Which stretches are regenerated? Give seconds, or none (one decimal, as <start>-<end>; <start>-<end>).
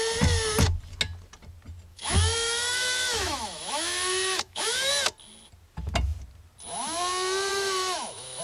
1.9-4.9; 7.5-8.4